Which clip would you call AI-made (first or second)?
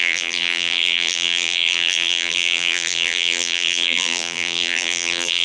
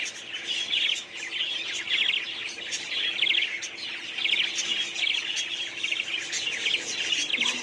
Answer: first